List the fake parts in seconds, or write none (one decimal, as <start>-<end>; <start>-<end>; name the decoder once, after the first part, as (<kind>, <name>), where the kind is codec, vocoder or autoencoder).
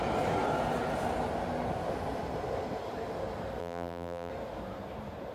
3.6-4.3 (vocoder, BigVGAN v2)